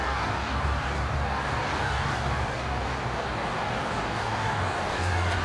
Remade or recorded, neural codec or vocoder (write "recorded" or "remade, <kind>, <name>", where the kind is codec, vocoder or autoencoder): remade, codec, DAC